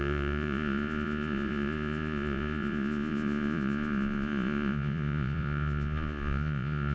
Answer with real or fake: fake